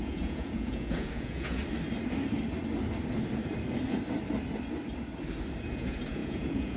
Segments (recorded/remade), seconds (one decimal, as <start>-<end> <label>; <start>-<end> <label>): 0.0-1.6 remade; 1.6-5.7 recorded; 5.7-6.8 remade